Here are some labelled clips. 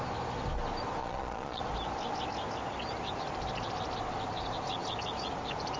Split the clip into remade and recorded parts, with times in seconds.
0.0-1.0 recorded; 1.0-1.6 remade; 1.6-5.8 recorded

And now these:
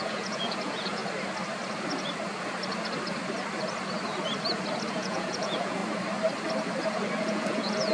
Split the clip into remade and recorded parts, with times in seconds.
0.0-1.0 remade; 1.0-4.9 recorded; 4.9-5.8 remade; 5.8-7.2 recorded; 7.2-7.9 remade